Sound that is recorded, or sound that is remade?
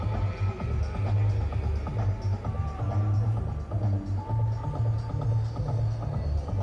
recorded